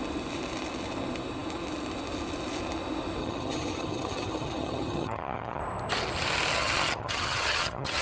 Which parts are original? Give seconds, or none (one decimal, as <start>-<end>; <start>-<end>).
0.0-3.2; 5.6-6.5